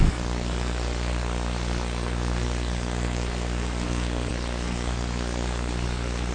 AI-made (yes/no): yes